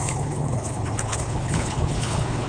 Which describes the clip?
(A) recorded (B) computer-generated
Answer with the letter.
B